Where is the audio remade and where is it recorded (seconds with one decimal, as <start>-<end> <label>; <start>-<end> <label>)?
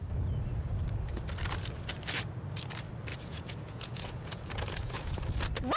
0.0-3.1 recorded; 3.1-5.2 remade; 5.2-5.8 recorded